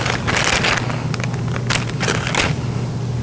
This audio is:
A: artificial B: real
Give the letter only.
B